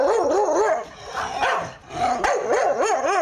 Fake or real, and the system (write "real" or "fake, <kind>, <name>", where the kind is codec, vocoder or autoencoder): real